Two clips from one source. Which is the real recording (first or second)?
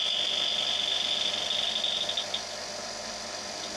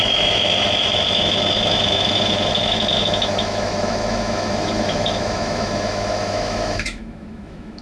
first